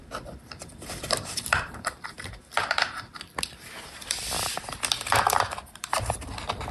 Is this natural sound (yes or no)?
no